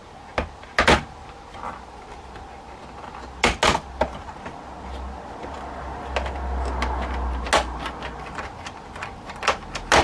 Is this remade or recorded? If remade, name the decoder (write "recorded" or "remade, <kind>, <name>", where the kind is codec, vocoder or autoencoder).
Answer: recorded